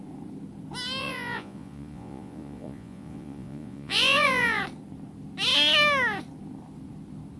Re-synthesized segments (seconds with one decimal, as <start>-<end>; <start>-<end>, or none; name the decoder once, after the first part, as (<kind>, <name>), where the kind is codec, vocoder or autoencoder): 1.0-4.6 (vocoder, Vocos)